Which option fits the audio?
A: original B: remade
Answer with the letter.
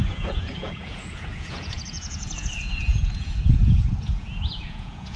B